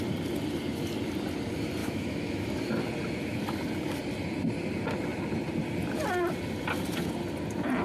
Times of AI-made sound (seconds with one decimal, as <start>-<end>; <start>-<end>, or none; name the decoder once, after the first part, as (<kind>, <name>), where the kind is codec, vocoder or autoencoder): 1.8-2.5 (autoencoder, DAC-VAE)